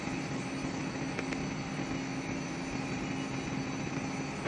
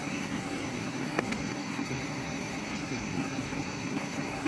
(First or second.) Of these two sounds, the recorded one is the first